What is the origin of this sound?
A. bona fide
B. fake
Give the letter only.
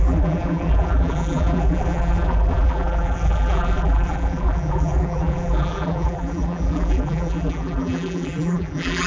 B